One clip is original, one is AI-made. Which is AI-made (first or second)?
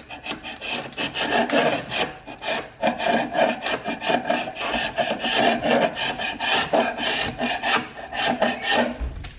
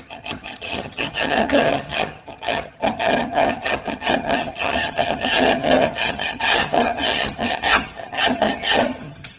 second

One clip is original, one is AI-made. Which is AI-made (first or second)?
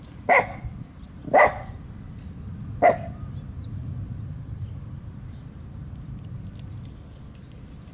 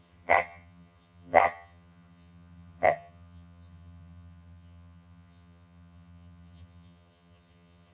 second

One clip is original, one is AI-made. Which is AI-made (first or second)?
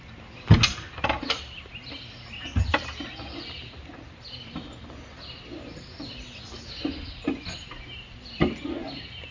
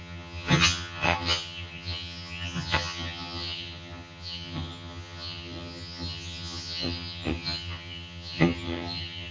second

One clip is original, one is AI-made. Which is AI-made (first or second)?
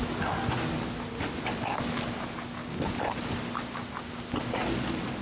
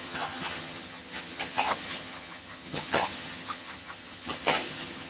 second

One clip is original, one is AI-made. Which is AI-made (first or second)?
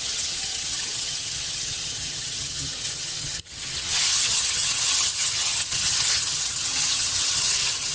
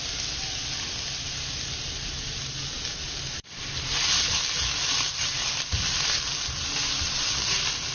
first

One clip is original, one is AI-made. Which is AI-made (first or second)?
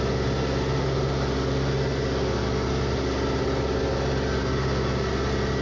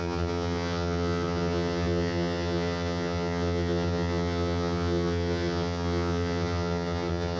second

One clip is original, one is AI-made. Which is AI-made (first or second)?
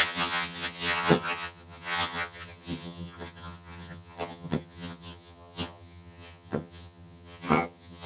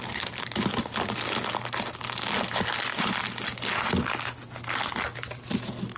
first